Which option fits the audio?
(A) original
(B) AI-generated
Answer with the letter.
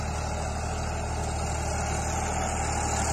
A